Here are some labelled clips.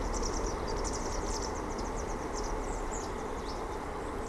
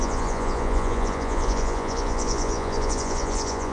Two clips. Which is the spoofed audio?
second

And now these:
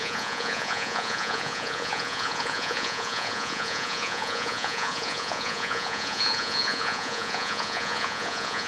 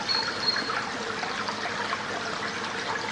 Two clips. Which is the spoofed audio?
first